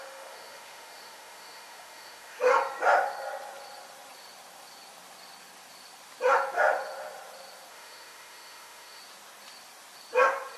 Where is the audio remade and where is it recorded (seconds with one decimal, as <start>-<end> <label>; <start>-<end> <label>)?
0.0-2.5 remade; 2.5-7.7 recorded; 7.7-9.0 remade; 9.0-10.6 recorded